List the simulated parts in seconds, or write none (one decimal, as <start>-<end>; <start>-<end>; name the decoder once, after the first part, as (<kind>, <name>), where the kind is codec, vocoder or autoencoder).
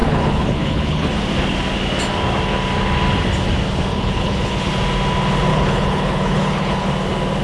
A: 0.0-1.1 (codec, HILCodec); 3.9-4.7; 5.5-6.9